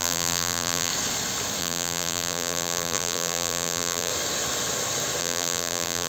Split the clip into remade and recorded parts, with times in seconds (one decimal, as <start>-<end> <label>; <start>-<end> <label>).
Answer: 0.0-0.9 remade; 0.9-1.6 recorded; 1.6-4.1 remade; 4.1-5.2 recorded; 5.2-6.1 remade